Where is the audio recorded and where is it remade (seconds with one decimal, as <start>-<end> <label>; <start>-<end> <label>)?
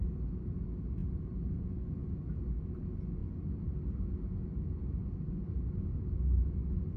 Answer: 0.0-7.0 recorded